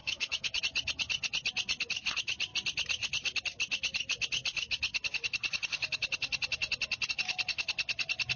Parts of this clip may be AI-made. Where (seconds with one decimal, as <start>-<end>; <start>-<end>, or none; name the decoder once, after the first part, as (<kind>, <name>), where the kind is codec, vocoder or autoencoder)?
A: 0.0-0.6 (autoencoder, DAC-VAE)